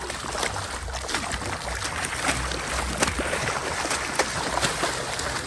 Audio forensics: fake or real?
real